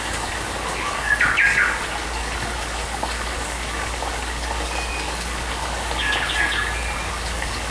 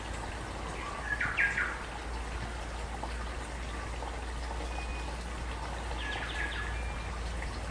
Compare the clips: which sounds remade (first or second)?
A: first